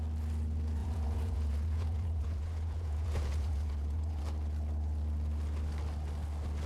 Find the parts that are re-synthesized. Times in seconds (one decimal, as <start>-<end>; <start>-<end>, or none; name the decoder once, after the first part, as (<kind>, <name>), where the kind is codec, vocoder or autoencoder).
0.8-4.2 (vocoder, Vocos)